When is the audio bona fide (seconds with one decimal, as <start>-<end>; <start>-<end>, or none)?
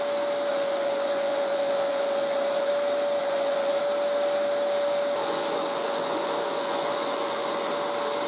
0.0-0.5; 2.7-3.2; 3.8-5.2; 7.7-8.3